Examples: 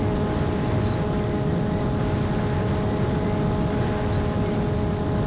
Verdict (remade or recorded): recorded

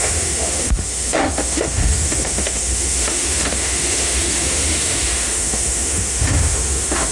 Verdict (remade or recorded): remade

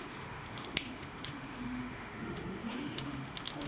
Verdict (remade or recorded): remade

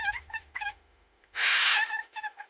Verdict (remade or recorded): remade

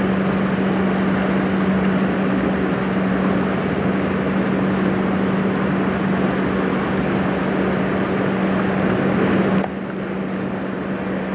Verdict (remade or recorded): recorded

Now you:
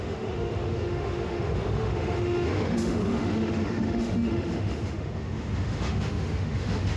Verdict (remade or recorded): remade